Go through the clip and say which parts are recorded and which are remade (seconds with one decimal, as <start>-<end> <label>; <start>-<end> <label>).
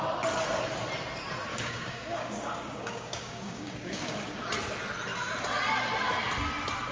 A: 0.0-1.5 recorded; 1.5-4.5 remade; 4.5-6.9 recorded